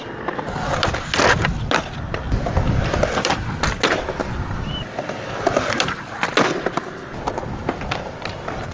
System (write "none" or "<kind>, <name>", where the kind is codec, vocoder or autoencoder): none